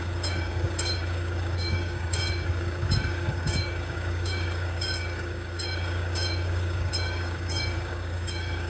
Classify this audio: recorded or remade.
remade